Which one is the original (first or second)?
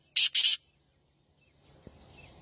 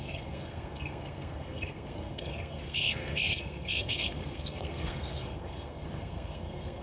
first